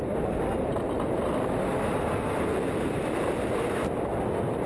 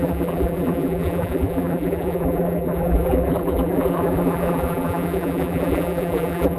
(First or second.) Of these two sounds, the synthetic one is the second